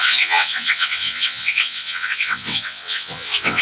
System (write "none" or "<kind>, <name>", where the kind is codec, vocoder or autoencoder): vocoder, WaveNeXt